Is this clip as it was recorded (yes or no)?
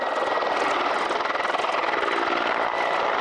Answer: yes